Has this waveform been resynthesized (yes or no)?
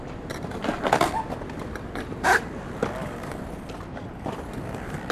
yes